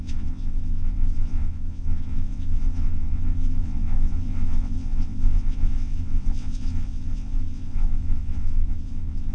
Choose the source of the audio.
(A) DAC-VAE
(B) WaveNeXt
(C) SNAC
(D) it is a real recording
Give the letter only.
B